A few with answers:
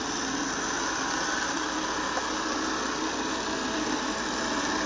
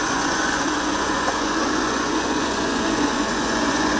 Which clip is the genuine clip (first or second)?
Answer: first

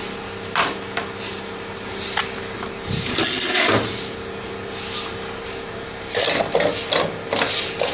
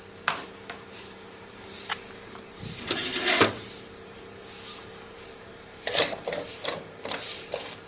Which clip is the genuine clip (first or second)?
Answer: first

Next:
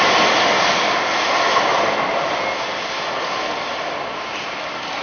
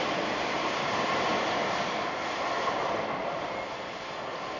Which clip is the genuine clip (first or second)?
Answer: first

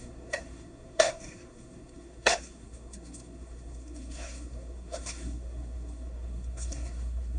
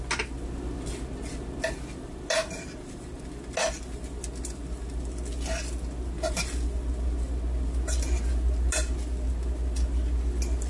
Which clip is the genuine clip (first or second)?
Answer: second